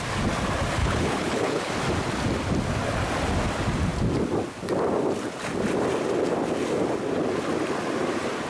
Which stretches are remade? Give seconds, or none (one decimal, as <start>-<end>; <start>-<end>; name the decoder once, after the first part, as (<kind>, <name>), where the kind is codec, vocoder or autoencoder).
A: 0.8-1.7 (codec, HILCodec)